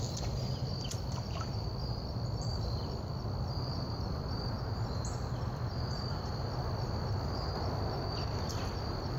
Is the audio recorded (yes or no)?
yes